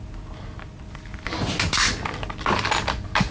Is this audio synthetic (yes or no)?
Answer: no